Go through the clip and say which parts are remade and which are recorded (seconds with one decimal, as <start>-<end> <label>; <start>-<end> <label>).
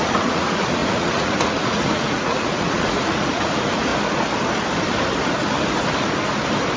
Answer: 0.0-3.9 remade; 3.9-6.8 recorded